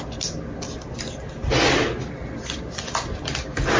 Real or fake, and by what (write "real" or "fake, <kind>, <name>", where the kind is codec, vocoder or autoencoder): real